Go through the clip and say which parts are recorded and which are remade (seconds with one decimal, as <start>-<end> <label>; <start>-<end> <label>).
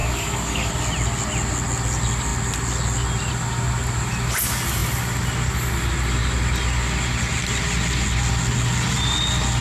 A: 0.0-0.7 remade; 0.7-9.6 recorded